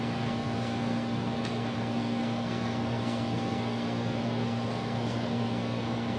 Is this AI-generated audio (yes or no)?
yes